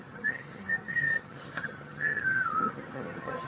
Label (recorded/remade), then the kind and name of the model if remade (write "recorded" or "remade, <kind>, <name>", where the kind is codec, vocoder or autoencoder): remade, vocoder, HiFi-GAN